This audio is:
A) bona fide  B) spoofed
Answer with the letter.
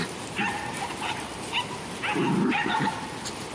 A